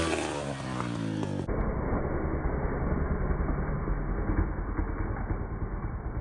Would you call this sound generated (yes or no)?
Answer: no